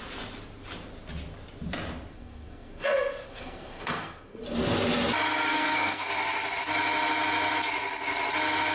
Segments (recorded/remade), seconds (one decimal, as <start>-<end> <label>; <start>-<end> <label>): 0.0-2.1 recorded; 2.1-4.4 remade; 4.4-5.5 recorded; 5.5-6.1 remade; 6.1-8.7 recorded